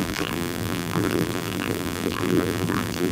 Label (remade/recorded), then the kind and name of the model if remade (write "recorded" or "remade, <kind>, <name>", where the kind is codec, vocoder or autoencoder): remade, vocoder, BigVGAN v2